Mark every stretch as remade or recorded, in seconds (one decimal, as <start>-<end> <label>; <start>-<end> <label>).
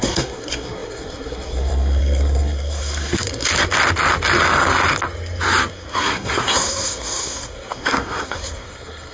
0.0-3.5 remade; 3.5-5.7 recorded; 5.7-9.1 remade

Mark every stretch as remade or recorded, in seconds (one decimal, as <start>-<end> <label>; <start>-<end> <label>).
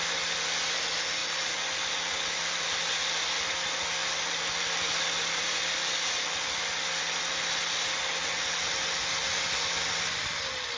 0.0-10.8 recorded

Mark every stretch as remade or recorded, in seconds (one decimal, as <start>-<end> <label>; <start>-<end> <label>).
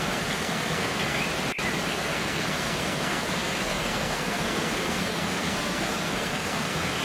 0.0-1.2 remade; 1.2-1.9 recorded; 1.9-7.0 remade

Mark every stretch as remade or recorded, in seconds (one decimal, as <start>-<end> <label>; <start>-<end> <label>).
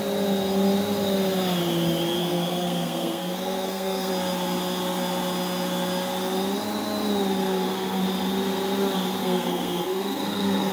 0.0-2.2 recorded; 2.2-4.1 remade; 4.1-7.4 recorded; 7.4-8.0 remade; 8.0-9.2 recorded; 9.2-10.7 remade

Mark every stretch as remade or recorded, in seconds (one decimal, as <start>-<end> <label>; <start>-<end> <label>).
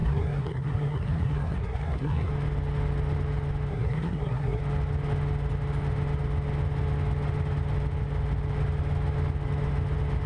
0.0-2.3 remade; 2.3-3.7 recorded; 3.7-4.6 remade; 4.6-10.3 recorded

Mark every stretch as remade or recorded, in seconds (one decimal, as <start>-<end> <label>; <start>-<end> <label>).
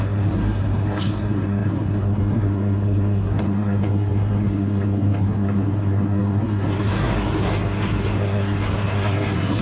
0.0-9.6 remade